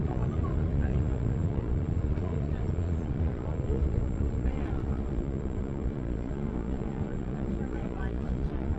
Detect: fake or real fake